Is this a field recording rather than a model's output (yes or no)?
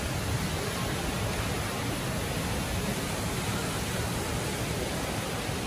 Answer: yes